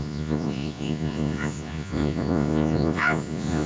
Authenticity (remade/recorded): remade